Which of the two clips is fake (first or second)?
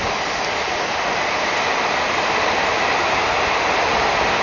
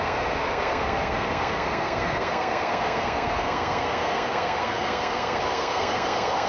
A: second